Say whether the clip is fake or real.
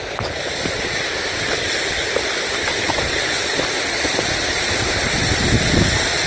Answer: real